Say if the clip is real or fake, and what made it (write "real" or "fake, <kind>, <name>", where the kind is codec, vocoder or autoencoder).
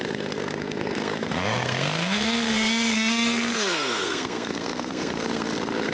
fake, codec, SNAC